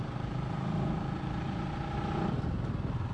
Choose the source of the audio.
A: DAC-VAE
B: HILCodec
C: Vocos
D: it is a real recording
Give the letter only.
D